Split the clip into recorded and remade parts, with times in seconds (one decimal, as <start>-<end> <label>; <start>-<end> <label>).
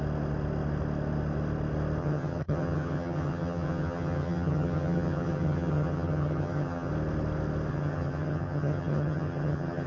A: 0.0-2.0 recorded; 2.0-6.9 remade; 6.9-7.7 recorded; 7.7-9.9 remade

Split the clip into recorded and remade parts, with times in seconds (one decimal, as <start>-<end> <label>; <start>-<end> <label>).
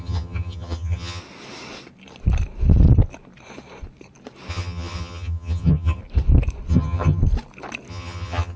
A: 0.0-1.2 remade; 1.2-4.5 recorded; 4.5-6.0 remade; 6.0-6.7 recorded; 6.7-7.2 remade; 7.2-7.9 recorded; 7.9-8.6 remade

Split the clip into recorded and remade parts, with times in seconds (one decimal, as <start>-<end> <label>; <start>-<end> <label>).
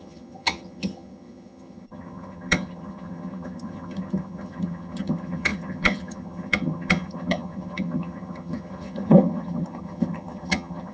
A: 0.0-10.9 remade